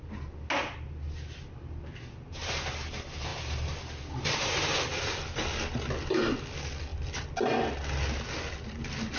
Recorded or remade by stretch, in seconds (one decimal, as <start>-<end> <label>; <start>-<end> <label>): 0.0-9.2 recorded